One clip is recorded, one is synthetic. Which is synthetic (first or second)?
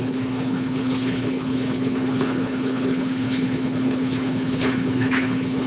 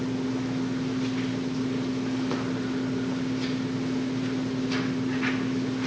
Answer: first